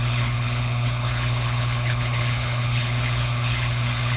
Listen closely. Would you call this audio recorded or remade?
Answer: remade